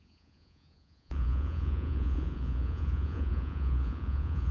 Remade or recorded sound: remade